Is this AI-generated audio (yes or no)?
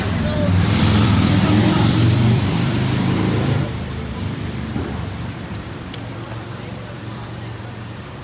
yes